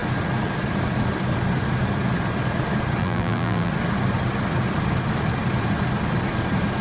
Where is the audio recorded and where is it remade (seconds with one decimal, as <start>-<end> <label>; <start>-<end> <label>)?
0.0-3.0 recorded; 3.0-3.7 remade; 3.7-6.8 recorded